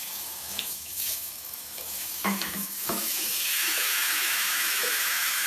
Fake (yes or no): yes